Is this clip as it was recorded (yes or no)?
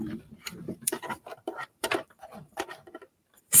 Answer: no